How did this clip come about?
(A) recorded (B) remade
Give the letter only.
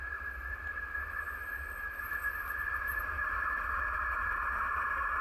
A